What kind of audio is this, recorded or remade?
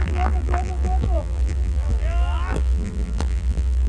remade